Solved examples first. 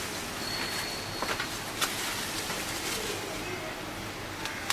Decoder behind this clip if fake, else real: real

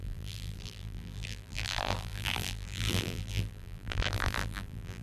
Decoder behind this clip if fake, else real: fake, vocoder, BigVGAN v2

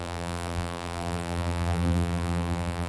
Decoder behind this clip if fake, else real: fake, vocoder, BigVGAN v2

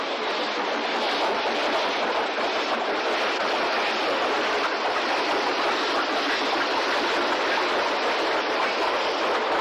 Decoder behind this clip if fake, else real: real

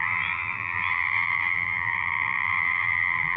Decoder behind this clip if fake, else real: fake, vocoder, BigVGAN v2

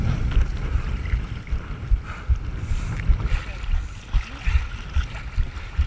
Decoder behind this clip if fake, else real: real